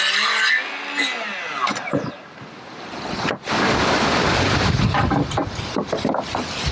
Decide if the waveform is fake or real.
real